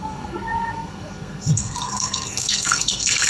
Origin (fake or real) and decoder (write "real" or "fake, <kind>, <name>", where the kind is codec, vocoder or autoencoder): fake, codec, SNAC